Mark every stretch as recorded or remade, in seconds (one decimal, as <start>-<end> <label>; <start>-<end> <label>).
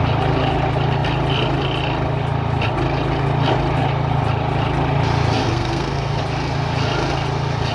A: 0.0-5.4 recorded; 5.4-6.2 remade; 6.2-7.7 recorded